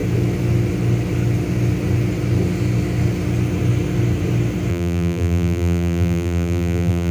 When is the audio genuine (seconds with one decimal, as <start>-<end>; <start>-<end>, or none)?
0.0-4.7